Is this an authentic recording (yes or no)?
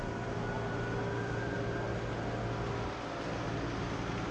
yes